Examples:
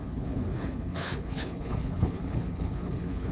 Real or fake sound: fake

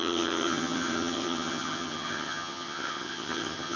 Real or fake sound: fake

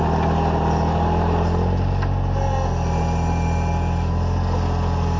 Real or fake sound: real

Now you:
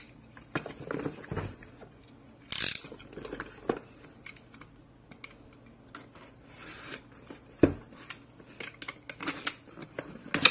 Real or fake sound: real